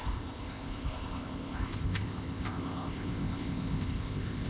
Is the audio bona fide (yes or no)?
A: no